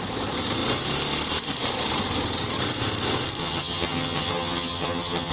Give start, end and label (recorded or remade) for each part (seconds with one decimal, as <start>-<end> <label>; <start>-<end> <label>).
0.0-3.4 recorded; 3.4-5.3 remade